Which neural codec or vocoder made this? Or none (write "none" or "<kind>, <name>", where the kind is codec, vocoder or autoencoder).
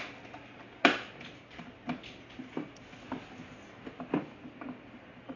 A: none